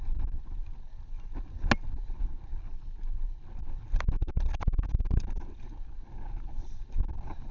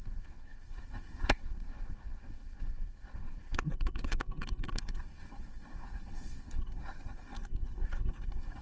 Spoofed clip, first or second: second